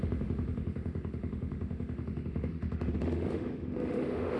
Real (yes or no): no